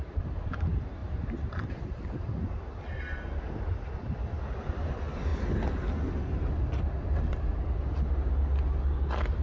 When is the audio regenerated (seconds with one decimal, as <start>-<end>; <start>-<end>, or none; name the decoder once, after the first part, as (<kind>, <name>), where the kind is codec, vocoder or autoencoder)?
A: none